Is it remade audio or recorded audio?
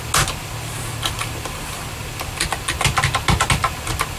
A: recorded